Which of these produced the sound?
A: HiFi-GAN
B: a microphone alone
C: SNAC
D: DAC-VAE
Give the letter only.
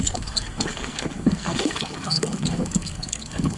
C